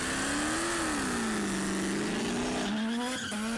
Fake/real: real